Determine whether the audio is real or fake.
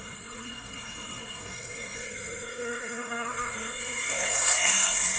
fake